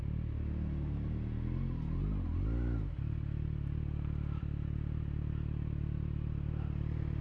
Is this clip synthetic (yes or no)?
no